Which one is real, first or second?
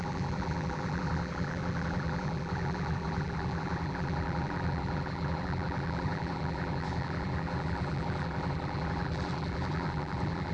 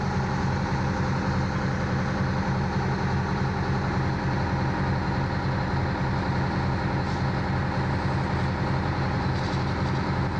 second